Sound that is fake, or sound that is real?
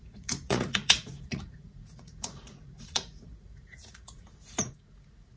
fake